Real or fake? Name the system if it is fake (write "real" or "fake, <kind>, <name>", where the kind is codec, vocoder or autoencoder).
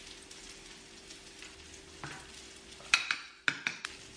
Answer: real